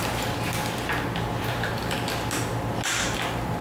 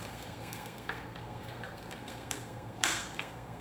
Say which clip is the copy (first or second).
second